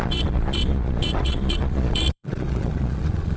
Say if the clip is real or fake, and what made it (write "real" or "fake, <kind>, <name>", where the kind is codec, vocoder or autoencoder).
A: fake, vocoder, Vocos